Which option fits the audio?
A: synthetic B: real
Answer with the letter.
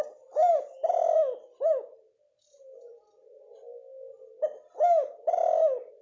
B